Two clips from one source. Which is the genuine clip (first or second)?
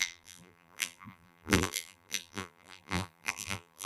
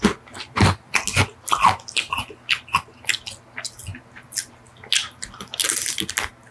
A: second